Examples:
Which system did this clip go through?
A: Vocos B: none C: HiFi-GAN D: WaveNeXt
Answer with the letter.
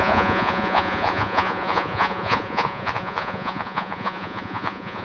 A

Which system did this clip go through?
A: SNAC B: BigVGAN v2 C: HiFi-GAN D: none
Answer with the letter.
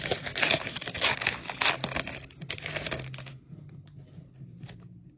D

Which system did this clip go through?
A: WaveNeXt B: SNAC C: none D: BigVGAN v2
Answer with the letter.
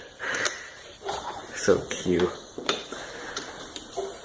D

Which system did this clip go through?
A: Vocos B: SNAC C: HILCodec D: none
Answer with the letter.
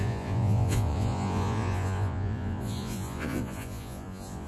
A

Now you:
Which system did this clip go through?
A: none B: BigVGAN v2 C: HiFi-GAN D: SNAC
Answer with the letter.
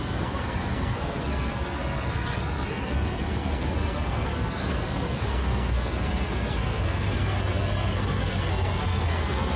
D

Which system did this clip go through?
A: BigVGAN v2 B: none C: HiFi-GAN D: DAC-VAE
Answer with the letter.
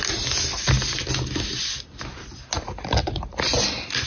B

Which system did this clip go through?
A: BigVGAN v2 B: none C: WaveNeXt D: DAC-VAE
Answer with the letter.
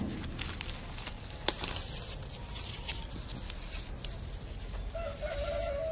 B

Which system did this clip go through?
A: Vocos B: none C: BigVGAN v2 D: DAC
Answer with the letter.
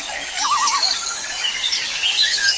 D